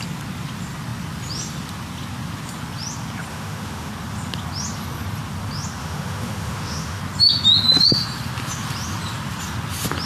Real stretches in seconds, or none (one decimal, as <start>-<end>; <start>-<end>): 0.0-3.3; 3.9-5.8; 7.0-10.1